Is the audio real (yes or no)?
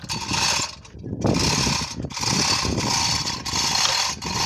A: yes